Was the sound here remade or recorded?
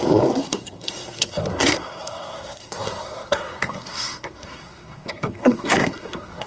remade